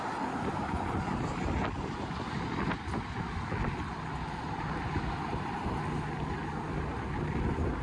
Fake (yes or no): no